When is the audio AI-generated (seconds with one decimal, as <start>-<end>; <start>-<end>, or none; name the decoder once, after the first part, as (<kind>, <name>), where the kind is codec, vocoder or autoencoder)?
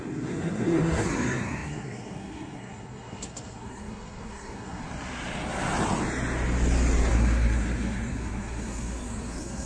0.0-4.8 (codec, SNAC); 7.1-9.7